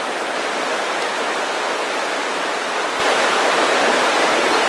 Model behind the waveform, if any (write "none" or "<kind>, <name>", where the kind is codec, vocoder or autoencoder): none